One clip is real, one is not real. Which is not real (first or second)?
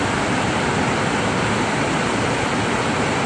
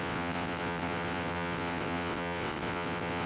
second